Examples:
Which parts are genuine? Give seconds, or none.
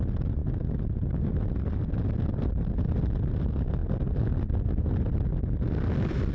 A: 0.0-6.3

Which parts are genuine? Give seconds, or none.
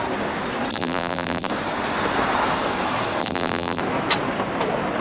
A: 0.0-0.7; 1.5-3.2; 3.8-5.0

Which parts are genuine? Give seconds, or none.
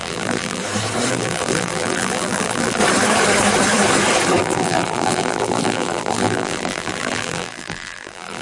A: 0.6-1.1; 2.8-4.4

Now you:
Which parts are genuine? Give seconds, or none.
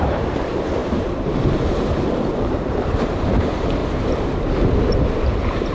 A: 3.8-5.0